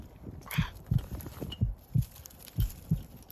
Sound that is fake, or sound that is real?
fake